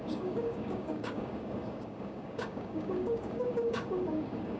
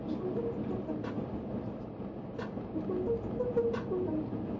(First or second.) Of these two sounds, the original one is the second